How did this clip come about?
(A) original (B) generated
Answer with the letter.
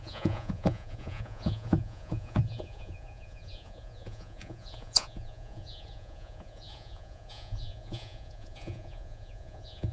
B